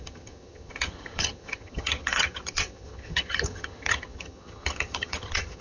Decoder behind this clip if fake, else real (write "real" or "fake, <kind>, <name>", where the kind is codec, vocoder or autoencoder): fake, vocoder, HiFi-GAN